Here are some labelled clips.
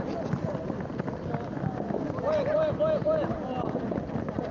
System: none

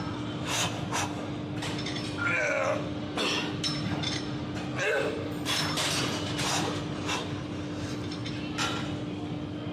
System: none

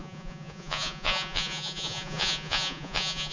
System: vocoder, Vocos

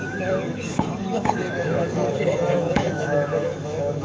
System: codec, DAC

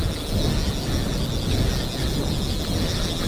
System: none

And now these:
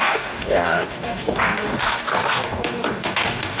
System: codec, DAC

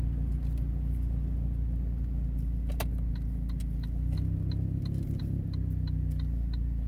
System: none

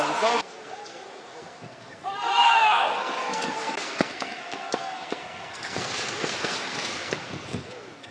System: codec, SNAC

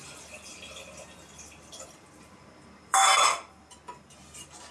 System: vocoder, BigVGAN v2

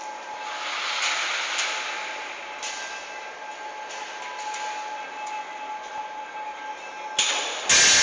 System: none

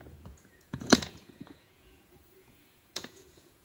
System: vocoder, Vocos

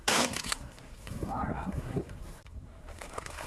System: codec, SNAC